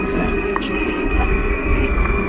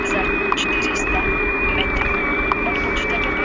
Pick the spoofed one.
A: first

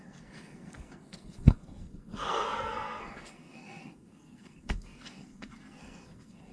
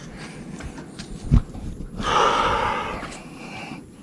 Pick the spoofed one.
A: first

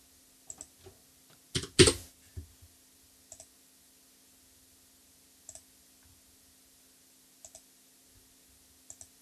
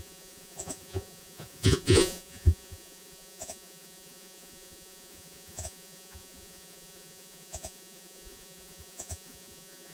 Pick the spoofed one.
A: second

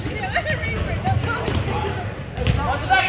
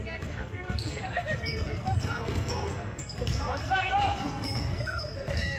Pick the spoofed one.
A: second